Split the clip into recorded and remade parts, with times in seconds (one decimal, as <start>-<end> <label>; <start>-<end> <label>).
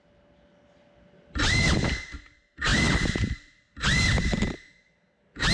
0.0-5.5 recorded